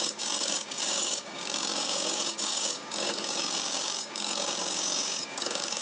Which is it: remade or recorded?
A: remade